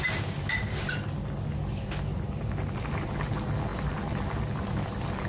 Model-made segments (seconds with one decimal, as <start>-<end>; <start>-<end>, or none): none